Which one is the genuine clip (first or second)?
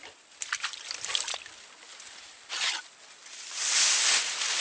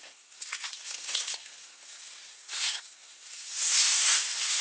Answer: first